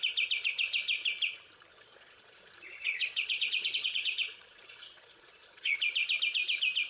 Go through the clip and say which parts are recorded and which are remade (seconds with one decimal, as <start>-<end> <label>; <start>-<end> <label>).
0.0-1.7 recorded; 1.7-5.8 remade; 5.8-6.9 recorded